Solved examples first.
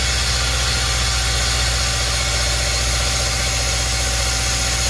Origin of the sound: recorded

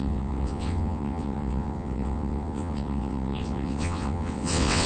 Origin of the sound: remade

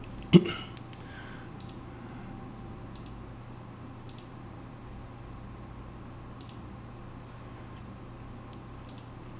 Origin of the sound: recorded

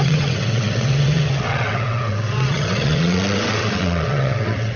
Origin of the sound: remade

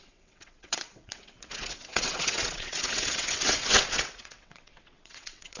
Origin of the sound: remade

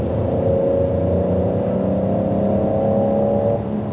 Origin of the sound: recorded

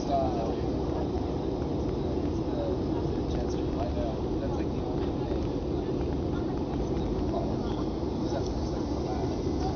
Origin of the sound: recorded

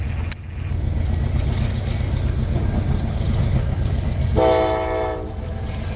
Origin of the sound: recorded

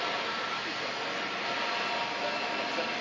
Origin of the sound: recorded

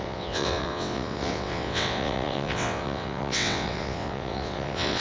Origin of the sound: remade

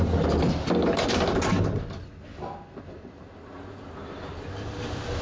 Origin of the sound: recorded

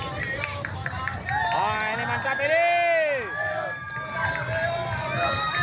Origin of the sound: recorded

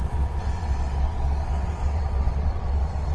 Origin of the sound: remade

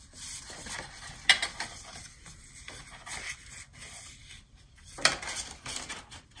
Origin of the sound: recorded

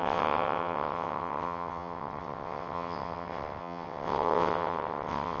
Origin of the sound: remade